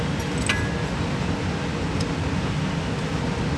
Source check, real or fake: real